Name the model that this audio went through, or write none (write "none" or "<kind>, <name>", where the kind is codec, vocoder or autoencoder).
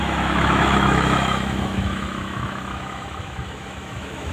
autoencoder, DAC-VAE